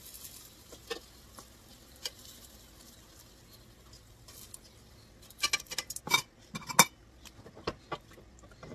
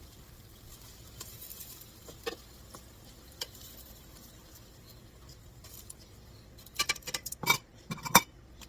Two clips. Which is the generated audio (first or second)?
second